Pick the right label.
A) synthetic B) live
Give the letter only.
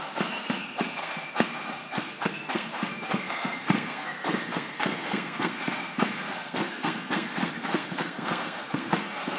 A